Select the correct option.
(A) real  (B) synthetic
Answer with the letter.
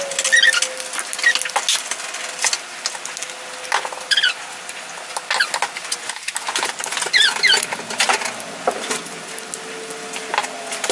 A